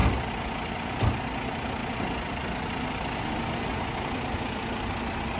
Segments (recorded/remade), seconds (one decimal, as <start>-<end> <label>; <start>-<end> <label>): 0.0-5.4 recorded